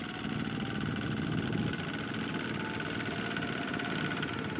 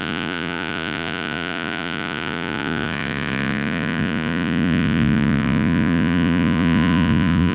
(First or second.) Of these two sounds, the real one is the first